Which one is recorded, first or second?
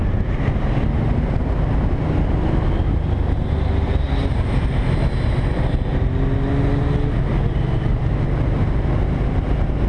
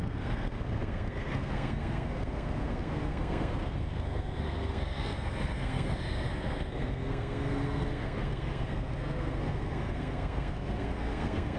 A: first